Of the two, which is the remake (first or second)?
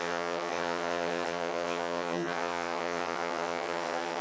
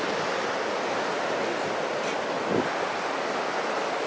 first